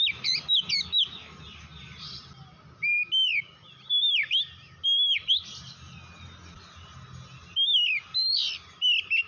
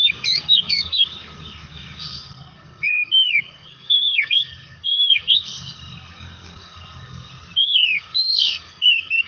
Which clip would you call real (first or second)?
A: first